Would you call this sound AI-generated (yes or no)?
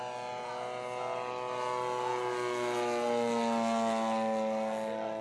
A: no